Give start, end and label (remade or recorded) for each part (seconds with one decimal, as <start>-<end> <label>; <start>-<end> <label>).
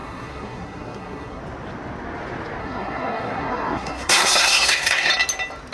0.0-1.4 remade; 1.4-2.6 recorded; 2.6-5.1 remade; 5.1-5.7 recorded